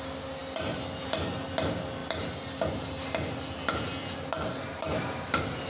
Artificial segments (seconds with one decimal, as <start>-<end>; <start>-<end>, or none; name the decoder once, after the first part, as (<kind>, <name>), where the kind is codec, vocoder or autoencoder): 0.0-2.0 (vocoder, BigVGAN v2); 4.5-5.7